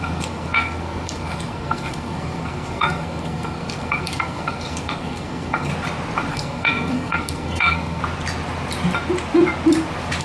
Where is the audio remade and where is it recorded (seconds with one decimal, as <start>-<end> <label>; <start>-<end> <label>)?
0.0-5.7 remade; 5.7-6.3 recorded; 6.3-8.0 remade; 8.0-10.2 recorded